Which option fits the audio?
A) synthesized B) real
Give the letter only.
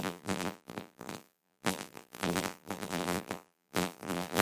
A